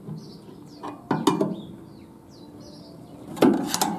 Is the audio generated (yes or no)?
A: no